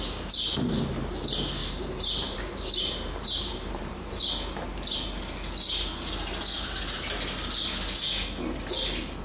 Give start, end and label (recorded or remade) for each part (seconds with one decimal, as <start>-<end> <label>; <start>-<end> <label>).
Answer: 0.0-1.6 recorded; 1.6-4.2 remade; 4.2-9.2 recorded